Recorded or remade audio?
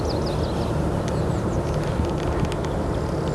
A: recorded